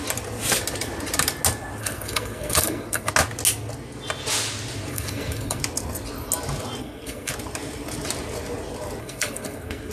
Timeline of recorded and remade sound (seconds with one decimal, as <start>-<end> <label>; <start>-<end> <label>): 0.0-1.8 recorded; 1.8-3.1 remade; 3.1-4.9 recorded; 4.9-5.6 remade; 5.6-6.8 recorded; 6.8-7.3 remade; 7.3-9.0 recorded; 9.0-9.9 remade